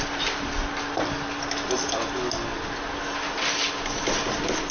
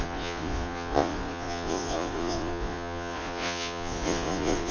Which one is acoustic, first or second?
first